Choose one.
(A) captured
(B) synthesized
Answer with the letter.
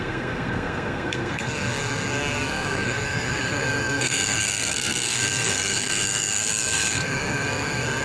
B